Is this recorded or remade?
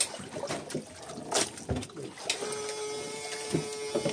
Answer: recorded